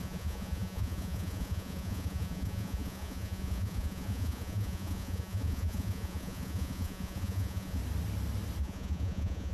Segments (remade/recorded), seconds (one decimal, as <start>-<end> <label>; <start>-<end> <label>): 0.0-7.8 remade; 7.8-8.6 recorded; 8.6-9.5 remade